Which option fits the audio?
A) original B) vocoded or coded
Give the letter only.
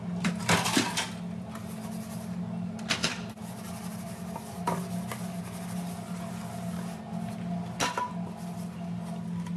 A